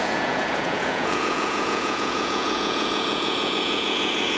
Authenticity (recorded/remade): remade